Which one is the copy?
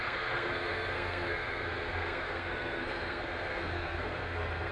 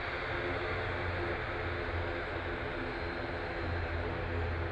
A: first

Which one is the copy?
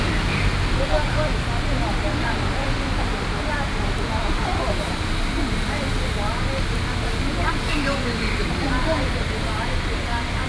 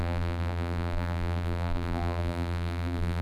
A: second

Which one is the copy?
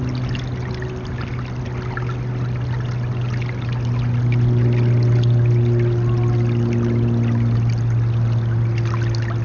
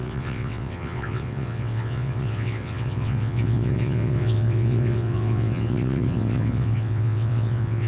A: second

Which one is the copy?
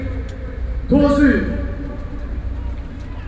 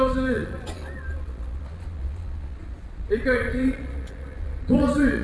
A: second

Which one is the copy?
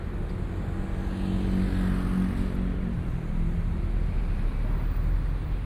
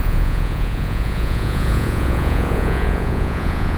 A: second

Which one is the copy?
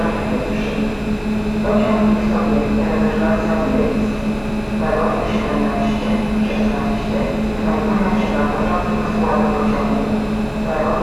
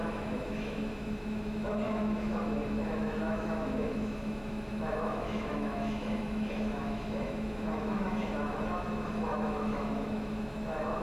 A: second